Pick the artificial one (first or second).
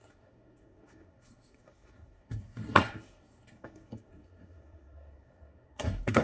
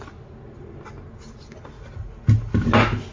first